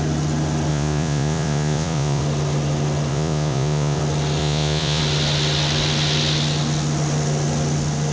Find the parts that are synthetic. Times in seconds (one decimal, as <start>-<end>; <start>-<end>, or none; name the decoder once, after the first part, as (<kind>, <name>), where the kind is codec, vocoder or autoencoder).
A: 0.7-2.2 (vocoder, Vocos); 3.1-4.0; 4.4-5.0